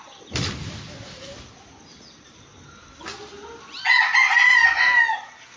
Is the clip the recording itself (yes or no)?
yes